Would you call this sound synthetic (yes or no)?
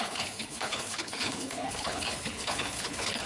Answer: yes